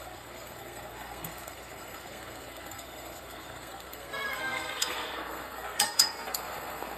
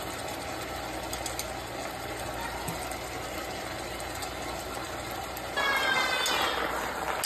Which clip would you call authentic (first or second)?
second